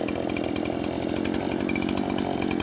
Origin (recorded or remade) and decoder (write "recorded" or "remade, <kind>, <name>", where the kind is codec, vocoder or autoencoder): recorded